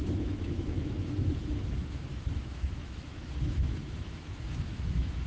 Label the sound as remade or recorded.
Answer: remade